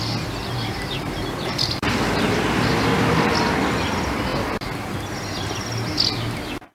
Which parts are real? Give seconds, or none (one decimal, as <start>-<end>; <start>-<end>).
0.0-0.4; 2.4-6.7